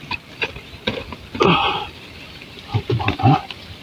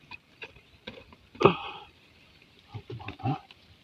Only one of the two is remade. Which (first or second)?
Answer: second